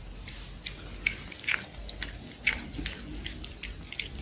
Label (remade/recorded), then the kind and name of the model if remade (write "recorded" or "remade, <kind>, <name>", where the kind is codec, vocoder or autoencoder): recorded